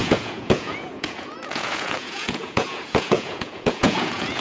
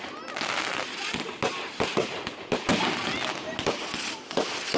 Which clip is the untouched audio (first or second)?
second